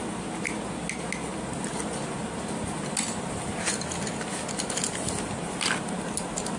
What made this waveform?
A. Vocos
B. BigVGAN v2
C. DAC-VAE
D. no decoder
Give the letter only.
D